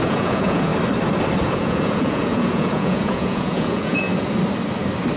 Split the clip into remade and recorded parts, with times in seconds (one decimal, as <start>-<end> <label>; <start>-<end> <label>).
0.0-0.7 remade; 0.7-1.4 recorded; 1.4-4.1 remade; 4.1-5.2 recorded